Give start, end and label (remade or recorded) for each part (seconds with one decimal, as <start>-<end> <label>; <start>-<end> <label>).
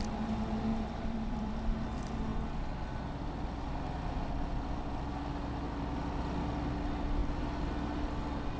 0.0-0.7 recorded; 0.7-1.5 remade; 1.5-8.6 recorded